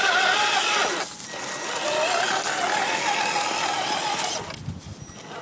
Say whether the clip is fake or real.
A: real